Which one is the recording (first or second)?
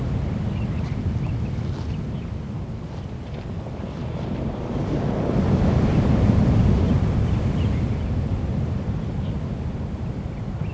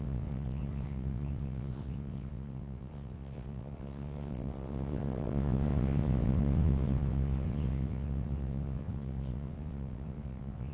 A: first